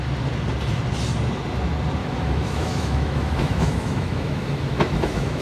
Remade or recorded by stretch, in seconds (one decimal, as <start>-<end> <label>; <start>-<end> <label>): 0.0-2.0 recorded; 2.0-5.4 remade